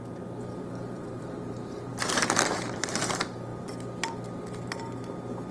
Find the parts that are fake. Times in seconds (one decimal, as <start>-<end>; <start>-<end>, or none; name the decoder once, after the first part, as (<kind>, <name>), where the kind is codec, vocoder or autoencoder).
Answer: 0.5-1.2 (vocoder, BigVGAN v2); 1.9-2.9